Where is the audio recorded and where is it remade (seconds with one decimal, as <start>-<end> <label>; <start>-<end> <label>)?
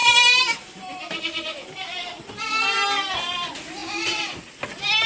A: 0.0-3.1 remade; 3.1-5.1 recorded